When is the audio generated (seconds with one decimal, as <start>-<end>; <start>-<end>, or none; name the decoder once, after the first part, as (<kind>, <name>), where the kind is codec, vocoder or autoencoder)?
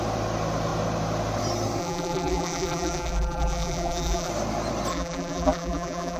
1.8-4.3 (vocoder, BigVGAN v2); 4.9-6.2